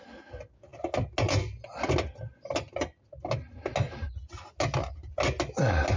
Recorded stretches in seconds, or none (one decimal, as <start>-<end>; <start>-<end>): 0.0-6.0